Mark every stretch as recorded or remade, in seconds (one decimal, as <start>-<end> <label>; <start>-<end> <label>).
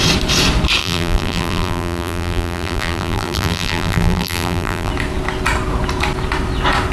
0.0-0.8 recorded; 0.8-4.9 remade; 4.9-6.9 recorded